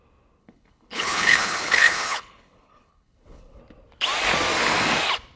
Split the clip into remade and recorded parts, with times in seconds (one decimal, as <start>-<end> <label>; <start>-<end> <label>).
0.0-0.4 recorded; 0.4-3.6 remade; 3.6-5.4 recorded